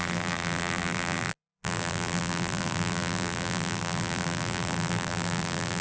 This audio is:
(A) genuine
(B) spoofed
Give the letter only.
B